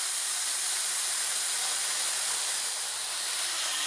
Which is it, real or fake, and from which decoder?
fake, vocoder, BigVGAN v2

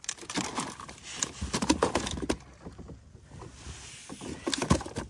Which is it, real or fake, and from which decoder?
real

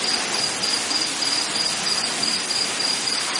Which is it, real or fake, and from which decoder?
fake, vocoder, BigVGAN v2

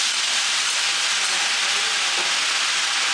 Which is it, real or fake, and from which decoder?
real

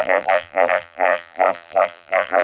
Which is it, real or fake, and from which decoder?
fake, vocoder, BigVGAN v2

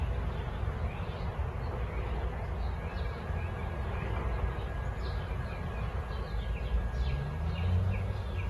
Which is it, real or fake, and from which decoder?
real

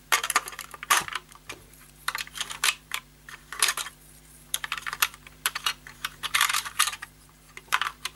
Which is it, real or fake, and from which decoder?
fake, vocoder, BigVGAN v2